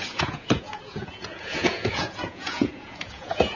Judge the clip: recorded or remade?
remade